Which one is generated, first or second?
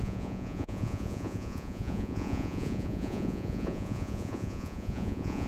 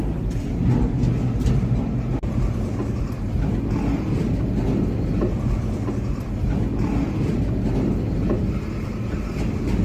first